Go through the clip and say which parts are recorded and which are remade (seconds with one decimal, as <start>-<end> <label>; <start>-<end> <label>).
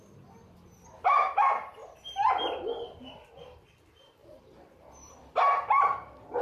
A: 0.0-1.8 recorded; 1.8-2.3 remade; 2.3-4.2 recorded; 4.2-5.4 remade; 5.4-6.4 recorded